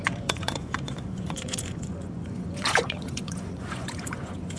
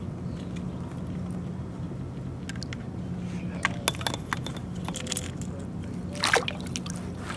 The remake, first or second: first